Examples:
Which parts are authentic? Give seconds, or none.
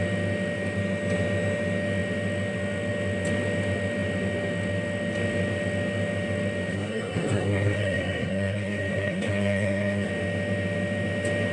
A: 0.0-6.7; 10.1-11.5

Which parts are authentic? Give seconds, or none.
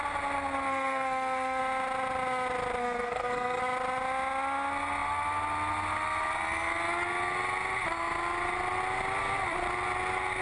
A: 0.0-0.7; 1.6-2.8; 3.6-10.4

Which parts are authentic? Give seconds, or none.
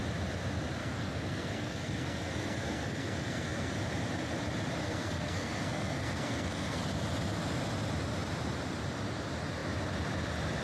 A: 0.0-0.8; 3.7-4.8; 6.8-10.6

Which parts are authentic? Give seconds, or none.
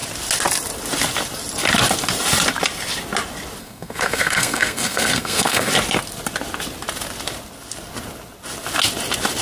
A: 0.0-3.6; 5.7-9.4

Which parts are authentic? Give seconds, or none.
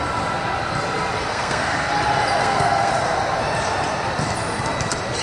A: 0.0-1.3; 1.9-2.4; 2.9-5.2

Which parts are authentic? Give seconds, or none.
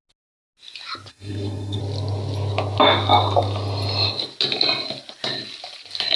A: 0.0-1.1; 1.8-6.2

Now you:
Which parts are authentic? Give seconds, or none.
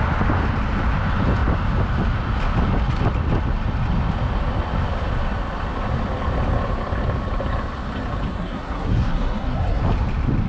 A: 0.0-8.3; 9.8-10.5